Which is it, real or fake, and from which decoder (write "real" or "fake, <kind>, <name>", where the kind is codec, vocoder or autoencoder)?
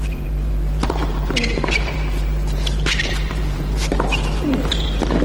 fake, vocoder, BigVGAN v2